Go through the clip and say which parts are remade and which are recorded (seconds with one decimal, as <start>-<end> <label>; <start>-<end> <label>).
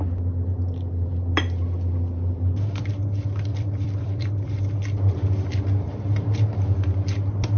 0.0-3.5 recorded; 3.5-4.6 remade; 4.6-7.6 recorded